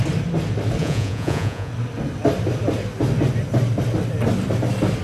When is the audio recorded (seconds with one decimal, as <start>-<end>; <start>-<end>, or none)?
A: 0.0-0.8; 1.7-5.0